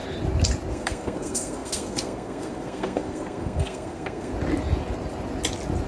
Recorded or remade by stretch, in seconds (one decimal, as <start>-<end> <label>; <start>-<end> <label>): 0.0-0.7 recorded; 0.7-4.3 remade; 4.3-5.9 recorded